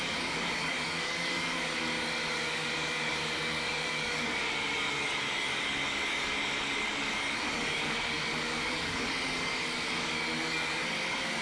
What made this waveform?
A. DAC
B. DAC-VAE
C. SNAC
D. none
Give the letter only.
A